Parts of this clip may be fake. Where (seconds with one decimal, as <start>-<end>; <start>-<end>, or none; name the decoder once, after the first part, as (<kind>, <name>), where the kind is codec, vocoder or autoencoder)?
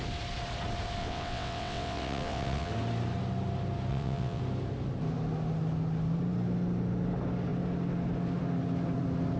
1.0-2.7 (vocoder, WaveNeXt); 3.9-4.4